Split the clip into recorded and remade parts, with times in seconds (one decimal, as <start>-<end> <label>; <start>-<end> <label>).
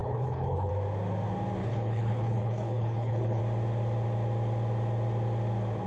0.0-0.7 remade; 0.7-1.6 recorded; 1.6-3.4 remade; 3.4-5.9 recorded